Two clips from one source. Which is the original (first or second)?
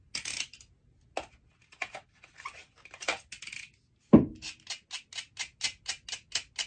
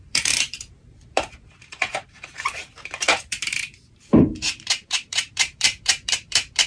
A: first